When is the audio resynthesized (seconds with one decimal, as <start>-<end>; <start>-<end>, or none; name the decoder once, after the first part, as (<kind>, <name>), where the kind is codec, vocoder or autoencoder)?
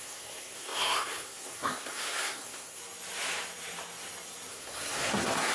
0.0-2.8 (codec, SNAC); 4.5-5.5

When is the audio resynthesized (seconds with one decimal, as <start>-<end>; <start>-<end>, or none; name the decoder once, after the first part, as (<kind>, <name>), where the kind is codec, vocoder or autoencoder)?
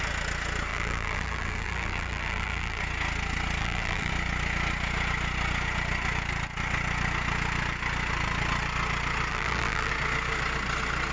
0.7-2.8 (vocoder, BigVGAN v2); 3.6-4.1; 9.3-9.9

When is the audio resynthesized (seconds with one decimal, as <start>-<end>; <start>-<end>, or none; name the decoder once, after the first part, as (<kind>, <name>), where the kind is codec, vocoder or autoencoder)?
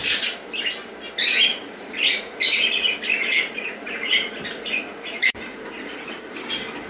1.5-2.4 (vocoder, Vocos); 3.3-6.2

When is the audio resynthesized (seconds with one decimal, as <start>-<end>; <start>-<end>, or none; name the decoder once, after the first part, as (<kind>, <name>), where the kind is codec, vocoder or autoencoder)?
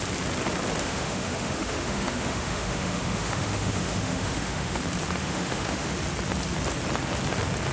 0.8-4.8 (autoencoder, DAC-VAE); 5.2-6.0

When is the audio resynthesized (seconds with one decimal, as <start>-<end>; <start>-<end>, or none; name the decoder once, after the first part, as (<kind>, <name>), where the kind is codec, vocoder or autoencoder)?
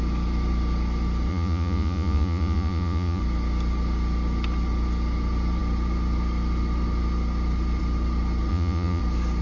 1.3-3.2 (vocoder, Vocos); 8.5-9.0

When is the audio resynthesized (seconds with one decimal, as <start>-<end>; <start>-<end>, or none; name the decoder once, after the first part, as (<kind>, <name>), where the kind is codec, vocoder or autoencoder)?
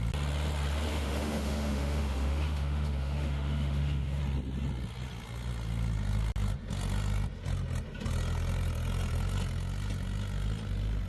0.9-4.2 (autoencoder, DAC-VAE)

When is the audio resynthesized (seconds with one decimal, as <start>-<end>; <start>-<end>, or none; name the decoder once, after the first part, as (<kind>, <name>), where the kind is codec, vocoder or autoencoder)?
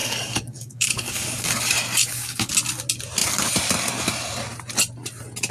0.0-1.5 (codec, DAC); 2.0-2.5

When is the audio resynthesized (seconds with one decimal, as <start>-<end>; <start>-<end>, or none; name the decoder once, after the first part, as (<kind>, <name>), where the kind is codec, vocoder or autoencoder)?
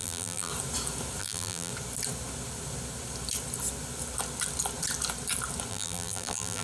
0.0-0.5 (vocoder, BigVGAN v2); 1.2-1.7; 5.7-6.6